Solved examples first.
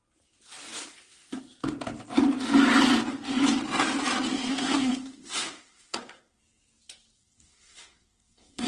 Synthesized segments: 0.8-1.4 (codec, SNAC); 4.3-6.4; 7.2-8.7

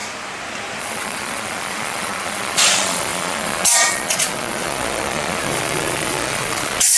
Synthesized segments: 0.8-7.0 (vocoder, Vocos)

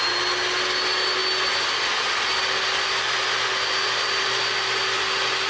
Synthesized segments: none

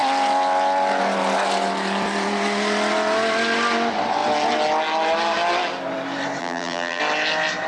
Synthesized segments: 6.4-7.0 (vocoder, BigVGAN v2)

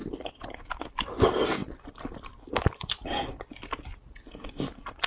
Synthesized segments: none